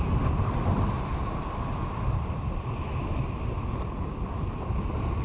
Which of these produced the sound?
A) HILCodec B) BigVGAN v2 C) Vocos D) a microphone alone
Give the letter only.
D